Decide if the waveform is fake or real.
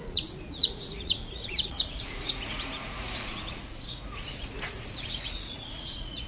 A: fake